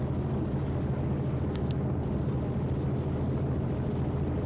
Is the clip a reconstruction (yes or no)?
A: no